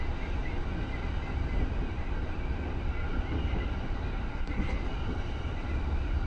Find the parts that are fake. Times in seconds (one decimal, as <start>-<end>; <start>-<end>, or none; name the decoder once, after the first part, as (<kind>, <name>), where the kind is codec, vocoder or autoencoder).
4.3-4.8 (codec, SNAC)